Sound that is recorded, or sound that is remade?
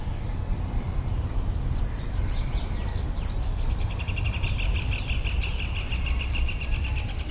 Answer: remade